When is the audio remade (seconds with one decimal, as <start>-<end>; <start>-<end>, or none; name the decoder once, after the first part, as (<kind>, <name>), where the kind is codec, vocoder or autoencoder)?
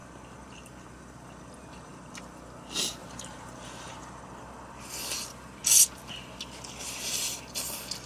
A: 3.0-4.2 (vocoder, BigVGAN v2)